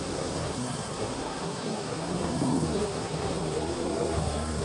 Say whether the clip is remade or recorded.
remade